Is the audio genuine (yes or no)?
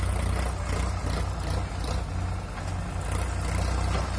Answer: yes